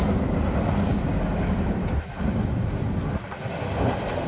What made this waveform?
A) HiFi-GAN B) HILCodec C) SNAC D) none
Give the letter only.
D